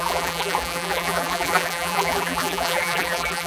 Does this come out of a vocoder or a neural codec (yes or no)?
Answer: yes